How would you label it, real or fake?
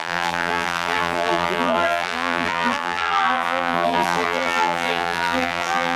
fake